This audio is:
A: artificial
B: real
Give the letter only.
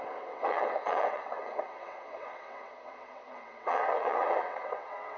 A